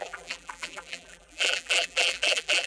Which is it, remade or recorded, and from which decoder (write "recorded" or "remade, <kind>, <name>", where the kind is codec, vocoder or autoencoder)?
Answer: remade, vocoder, BigVGAN v2